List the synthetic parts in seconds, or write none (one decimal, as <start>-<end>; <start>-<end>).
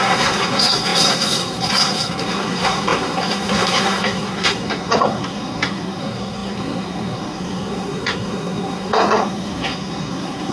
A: 0.0-10.5